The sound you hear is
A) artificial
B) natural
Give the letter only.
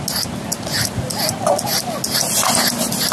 B